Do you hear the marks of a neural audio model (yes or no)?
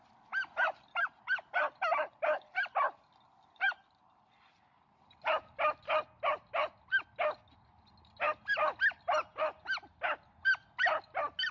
no